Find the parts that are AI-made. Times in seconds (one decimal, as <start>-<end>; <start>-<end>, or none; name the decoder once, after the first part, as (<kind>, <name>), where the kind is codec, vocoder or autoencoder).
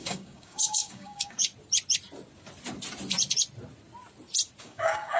0.0-1.5 (codec, DAC); 4.6-5.2